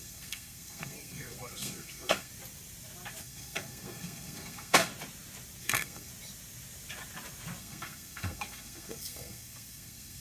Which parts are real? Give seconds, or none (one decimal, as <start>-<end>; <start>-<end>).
2.3-3.2; 4.9-5.6; 6.1-7.6